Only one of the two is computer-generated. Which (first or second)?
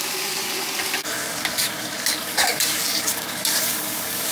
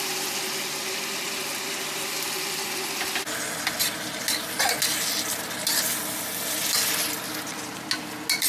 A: first